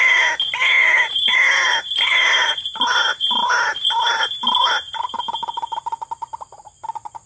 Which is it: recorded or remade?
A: recorded